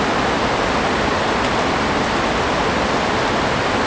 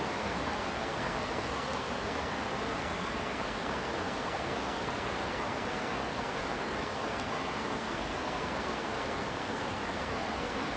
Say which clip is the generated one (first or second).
second